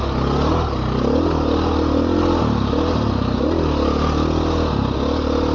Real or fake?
real